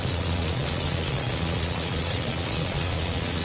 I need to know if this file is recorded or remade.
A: remade